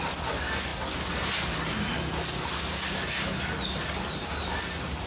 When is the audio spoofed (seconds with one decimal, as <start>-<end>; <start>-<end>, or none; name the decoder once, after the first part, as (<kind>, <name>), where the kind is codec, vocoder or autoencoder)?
none